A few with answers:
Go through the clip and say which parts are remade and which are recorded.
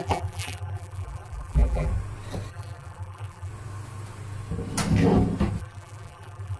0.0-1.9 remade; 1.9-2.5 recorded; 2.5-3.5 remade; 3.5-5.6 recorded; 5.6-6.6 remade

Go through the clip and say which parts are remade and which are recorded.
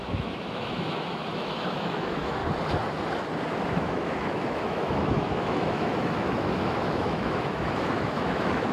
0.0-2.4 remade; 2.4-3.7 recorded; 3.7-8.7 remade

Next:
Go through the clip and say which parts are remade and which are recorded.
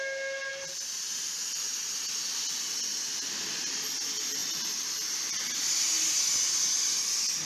0.0-7.5 recorded